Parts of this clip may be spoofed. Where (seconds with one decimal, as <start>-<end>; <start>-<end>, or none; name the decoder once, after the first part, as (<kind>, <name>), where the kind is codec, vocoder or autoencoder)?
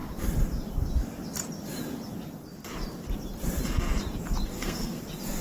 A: 4.5-5.0 (codec, SNAC)